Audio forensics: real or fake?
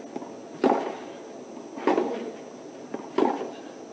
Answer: real